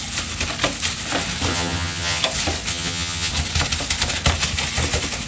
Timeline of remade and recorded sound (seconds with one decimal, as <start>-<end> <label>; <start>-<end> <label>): 0.0-1.5 recorded; 1.5-2.2 remade; 2.2-2.7 recorded; 2.7-3.3 remade; 3.3-5.3 recorded